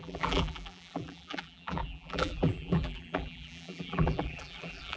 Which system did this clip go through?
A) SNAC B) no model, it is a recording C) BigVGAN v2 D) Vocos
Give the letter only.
C